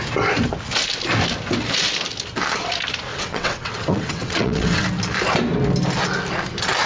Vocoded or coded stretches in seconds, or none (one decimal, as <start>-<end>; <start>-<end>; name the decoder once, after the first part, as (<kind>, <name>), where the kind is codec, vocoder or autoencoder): 3.1-4.8 (vocoder, WaveNeXt)